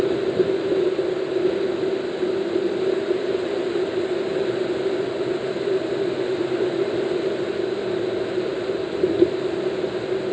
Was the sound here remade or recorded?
remade